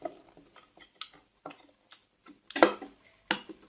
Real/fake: real